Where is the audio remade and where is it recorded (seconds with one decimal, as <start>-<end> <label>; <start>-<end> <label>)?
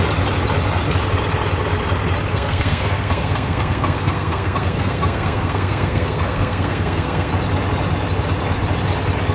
0.0-2.3 recorded; 2.3-7.3 remade; 7.3-9.3 recorded